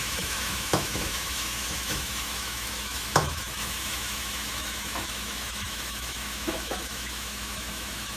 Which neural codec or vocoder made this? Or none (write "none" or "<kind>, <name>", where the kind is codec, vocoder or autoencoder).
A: autoencoder, DAC-VAE